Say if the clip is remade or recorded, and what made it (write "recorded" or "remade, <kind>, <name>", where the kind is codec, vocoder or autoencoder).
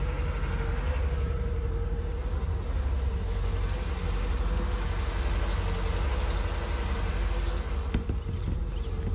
recorded